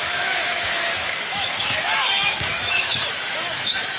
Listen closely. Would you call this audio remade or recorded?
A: remade